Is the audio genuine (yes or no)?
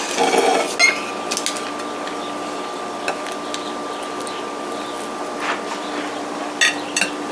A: yes